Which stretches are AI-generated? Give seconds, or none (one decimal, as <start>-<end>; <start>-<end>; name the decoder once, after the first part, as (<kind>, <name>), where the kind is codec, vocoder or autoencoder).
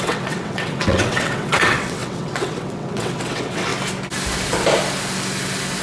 0.0-3.7 (vocoder, WaveNeXt)